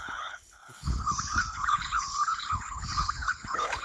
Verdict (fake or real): fake